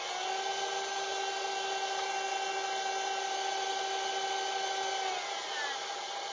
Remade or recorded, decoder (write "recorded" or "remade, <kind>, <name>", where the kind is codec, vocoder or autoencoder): recorded